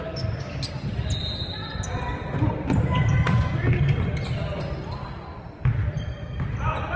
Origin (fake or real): real